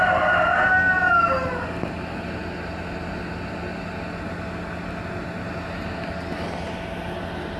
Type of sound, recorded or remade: recorded